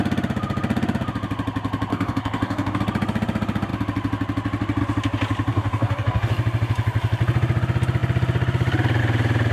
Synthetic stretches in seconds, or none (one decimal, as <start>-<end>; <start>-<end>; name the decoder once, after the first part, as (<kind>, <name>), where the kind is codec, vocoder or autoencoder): 1.9-2.8 (codec, DAC); 5.5-6.3